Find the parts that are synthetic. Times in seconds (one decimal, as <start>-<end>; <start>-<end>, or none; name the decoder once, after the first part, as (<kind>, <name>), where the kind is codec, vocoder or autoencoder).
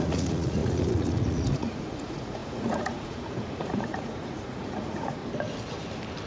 0.0-5.2 (vocoder, Vocos)